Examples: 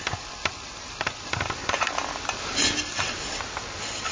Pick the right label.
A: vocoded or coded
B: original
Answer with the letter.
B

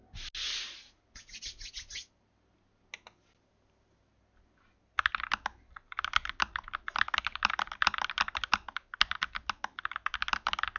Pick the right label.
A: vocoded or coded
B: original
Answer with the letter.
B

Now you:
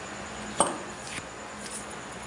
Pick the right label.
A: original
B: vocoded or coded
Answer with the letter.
B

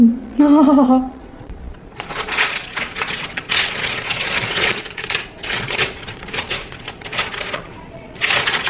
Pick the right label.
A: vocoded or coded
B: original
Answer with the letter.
A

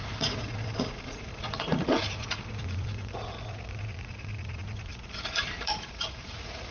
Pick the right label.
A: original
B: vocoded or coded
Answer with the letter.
B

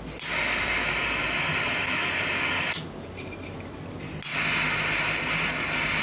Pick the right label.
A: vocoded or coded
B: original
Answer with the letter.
B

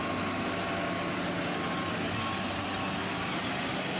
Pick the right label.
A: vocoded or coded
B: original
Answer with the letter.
B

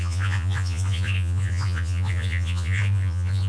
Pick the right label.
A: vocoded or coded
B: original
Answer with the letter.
A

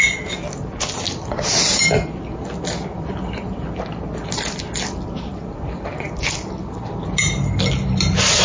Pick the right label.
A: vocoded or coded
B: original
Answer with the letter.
B